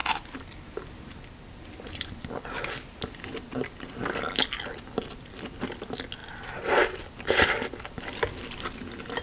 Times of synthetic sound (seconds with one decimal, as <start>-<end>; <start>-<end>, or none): none